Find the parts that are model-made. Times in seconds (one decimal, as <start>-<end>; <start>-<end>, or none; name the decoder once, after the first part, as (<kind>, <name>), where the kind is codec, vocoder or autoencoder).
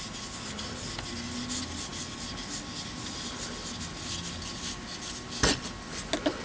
none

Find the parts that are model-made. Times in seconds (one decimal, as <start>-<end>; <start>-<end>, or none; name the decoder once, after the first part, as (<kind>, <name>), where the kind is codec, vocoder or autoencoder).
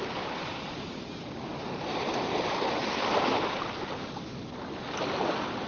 0.5-2.1 (vocoder, BigVGAN v2); 2.8-3.9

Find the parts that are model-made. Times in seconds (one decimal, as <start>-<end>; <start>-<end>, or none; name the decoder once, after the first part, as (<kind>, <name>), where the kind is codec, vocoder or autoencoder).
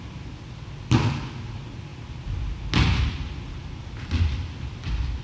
3.6-4.1 (vocoder, BigVGAN v2)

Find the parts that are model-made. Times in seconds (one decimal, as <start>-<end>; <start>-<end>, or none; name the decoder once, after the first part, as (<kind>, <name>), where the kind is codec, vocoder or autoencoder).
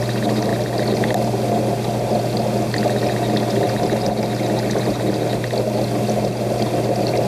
none